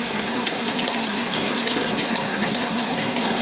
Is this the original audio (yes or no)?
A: no